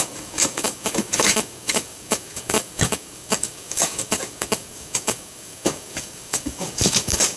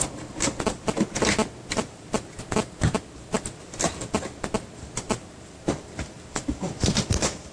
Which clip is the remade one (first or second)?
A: first